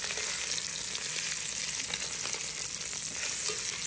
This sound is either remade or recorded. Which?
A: recorded